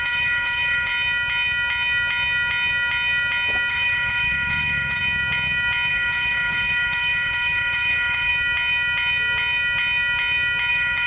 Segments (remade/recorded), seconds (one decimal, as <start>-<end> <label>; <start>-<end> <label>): 0.0-0.9 remade; 0.9-3.7 recorded; 3.7-5.0 remade; 5.0-5.9 recorded; 5.9-8.3 remade; 8.3-10.7 recorded; 10.7-11.1 remade